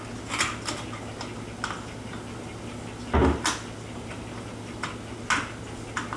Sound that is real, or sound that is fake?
real